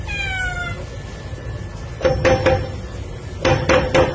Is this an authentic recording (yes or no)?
yes